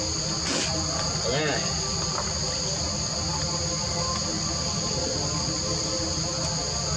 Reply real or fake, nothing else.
real